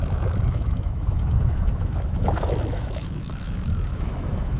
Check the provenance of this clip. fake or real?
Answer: fake